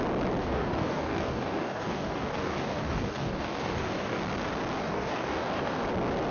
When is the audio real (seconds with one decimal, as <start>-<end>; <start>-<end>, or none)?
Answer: 0.0-0.4; 4.2-4.8; 5.8-6.3